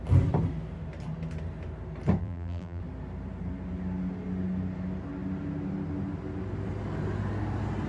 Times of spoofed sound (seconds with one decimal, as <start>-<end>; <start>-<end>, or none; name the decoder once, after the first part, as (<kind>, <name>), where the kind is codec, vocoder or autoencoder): 2.2-2.8 (vocoder, BigVGAN v2)

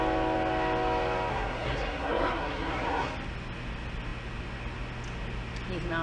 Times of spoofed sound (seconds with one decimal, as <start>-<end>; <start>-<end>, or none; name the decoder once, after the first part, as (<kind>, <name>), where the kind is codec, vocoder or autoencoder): 1.3-3.1 (codec, SNAC)

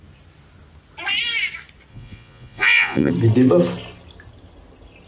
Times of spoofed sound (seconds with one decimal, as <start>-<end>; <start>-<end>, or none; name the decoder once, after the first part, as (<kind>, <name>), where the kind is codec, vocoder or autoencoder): 1.9-3.1 (vocoder, Vocos)

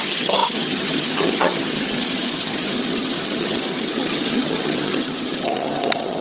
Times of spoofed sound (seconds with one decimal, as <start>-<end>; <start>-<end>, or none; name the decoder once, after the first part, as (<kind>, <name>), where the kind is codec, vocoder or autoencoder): 0.0-6.2 (vocoder, HiFi-GAN)

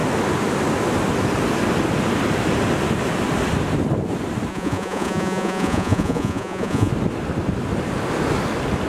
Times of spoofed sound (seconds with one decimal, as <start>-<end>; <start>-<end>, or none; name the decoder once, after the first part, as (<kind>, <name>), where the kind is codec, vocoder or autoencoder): 4.5-6.9 (vocoder, Vocos)

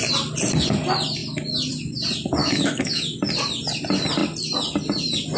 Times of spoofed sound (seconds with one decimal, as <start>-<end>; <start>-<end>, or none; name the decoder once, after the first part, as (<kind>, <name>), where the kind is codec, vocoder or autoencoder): 2.4-3.0 (autoencoder, DAC-VAE)

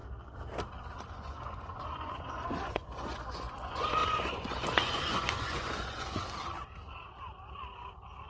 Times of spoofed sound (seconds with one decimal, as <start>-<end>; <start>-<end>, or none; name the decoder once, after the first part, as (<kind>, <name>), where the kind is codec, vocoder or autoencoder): 1.1-6.2 (vocoder, Vocos)